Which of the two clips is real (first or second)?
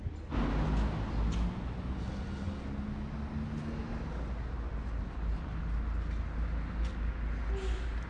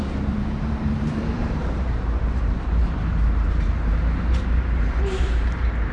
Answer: first